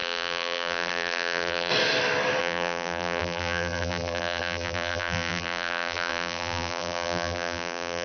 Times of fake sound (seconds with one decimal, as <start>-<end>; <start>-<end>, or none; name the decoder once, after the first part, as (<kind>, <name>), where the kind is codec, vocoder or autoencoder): 0.0-1.7 (vocoder, BigVGAN v2); 2.4-8.0